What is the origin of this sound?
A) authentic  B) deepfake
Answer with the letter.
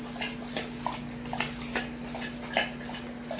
A